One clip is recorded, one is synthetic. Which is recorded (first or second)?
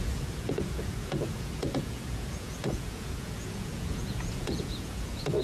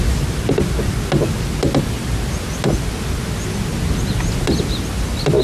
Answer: second